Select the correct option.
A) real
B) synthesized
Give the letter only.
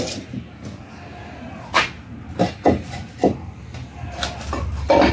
A